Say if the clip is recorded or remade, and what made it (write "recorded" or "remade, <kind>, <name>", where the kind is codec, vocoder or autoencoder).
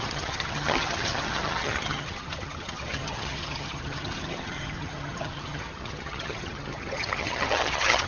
remade, vocoder, HiFi-GAN